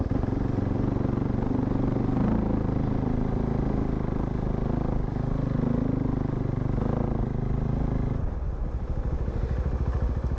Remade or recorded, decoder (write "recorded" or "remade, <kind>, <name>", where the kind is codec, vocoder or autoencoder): recorded